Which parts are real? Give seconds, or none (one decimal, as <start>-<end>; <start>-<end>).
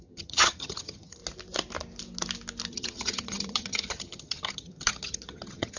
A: 1.2-2.7